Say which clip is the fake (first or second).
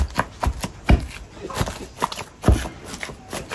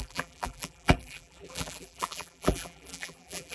second